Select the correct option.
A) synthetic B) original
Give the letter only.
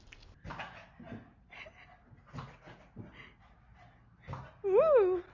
B